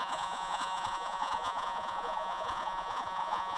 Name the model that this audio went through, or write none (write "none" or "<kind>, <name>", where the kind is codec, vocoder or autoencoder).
vocoder, Vocos